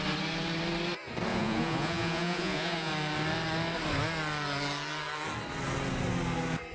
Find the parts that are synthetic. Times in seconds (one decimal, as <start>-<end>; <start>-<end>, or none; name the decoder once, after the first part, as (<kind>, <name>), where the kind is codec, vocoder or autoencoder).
1.3-2.9 (vocoder, Vocos)